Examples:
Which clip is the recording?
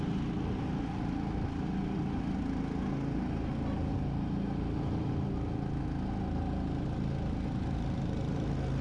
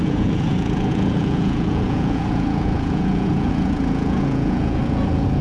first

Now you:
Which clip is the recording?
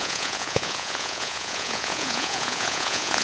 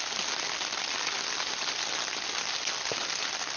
second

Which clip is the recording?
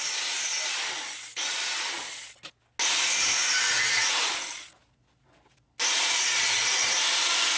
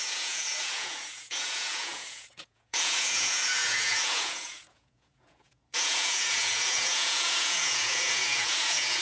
first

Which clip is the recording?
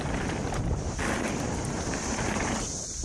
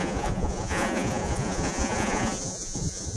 first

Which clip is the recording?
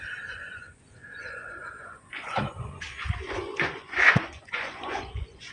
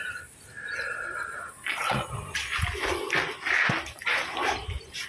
second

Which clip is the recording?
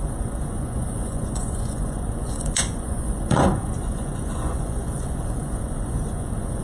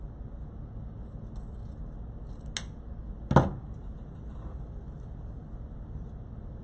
second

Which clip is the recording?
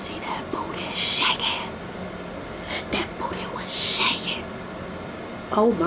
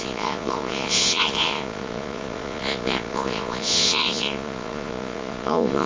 first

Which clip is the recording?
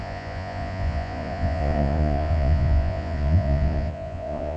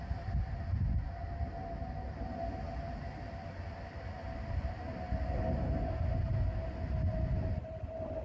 second